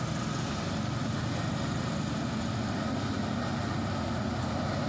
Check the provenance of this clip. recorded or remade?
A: recorded